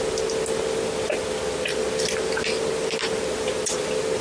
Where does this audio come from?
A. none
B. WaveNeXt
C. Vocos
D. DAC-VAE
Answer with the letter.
A